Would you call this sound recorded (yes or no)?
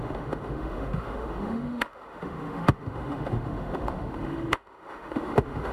no